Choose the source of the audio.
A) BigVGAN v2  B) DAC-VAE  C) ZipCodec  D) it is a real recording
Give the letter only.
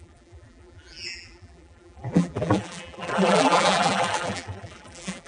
A